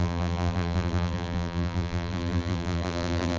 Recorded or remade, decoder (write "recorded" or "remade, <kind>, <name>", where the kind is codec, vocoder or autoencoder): remade, vocoder, BigVGAN v2